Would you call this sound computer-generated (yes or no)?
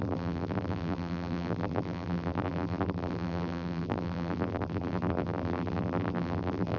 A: yes